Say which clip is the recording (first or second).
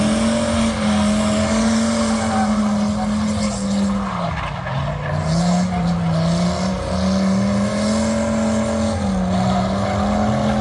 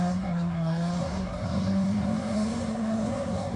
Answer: first